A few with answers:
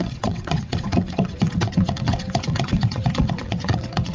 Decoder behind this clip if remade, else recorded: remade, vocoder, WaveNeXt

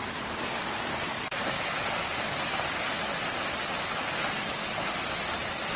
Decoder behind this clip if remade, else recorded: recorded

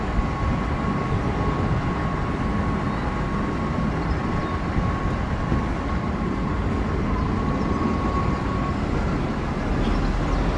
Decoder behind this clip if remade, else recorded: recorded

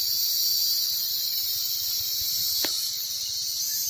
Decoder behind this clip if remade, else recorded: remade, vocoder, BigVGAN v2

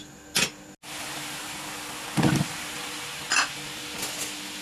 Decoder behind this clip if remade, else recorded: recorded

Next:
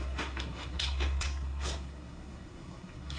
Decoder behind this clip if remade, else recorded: remade, codec, SNAC